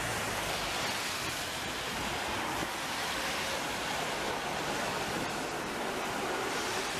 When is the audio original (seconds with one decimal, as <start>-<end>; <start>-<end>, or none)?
0.0-7.0

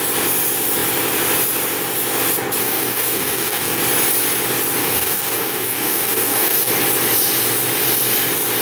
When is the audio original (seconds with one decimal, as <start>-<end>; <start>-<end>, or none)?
0.0-2.6; 3.8-4.8; 6.7-8.6

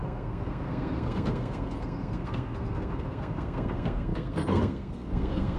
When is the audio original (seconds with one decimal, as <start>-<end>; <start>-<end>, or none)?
none

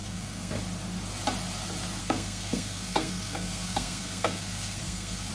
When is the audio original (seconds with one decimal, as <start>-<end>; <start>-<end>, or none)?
0.6-2.0

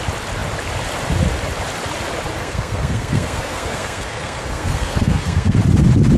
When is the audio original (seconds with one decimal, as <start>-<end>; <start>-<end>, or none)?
0.0-2.4; 5.6-6.2

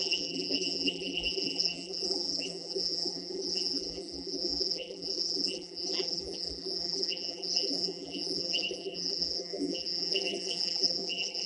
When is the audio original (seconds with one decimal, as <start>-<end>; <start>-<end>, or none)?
none

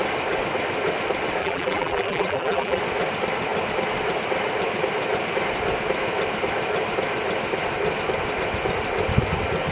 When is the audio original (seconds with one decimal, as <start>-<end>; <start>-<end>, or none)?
0.0-1.4; 2.8-9.7

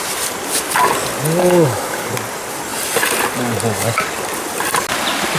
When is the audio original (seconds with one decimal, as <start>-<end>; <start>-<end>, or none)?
0.0-1.4; 2.1-5.4